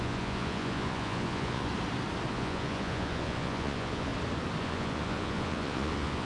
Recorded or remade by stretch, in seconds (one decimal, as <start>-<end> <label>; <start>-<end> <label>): 0.0-1.7 remade; 1.7-2.3 recorded; 2.3-4.1 remade; 4.1-4.6 recorded; 4.6-6.2 remade

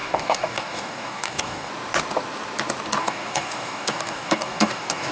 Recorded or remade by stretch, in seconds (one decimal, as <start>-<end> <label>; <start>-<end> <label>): 0.0-1.7 remade; 1.7-3.0 recorded; 3.0-5.1 remade

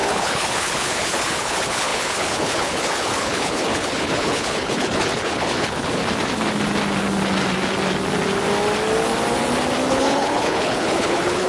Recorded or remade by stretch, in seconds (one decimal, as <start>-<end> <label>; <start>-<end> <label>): 0.0-6.0 remade; 6.0-9.9 recorded; 9.9-11.5 remade